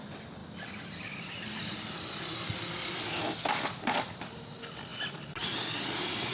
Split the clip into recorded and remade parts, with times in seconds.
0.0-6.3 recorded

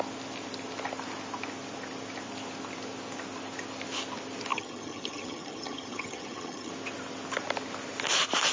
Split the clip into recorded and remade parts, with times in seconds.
0.0-4.5 recorded; 4.5-6.7 remade; 6.7-8.5 recorded